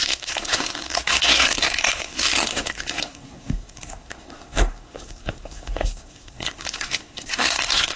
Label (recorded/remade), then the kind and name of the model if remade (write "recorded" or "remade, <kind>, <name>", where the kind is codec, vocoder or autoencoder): remade, codec, SNAC